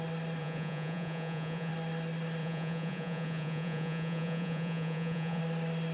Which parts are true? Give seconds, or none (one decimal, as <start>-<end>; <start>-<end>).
0.0-0.4; 1.7-2.4; 5.4-5.9